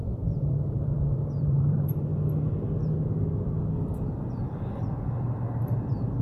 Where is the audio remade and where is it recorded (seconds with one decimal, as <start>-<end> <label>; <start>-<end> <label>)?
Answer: 0.0-2.1 remade; 2.1-4.4 recorded; 4.4-6.2 remade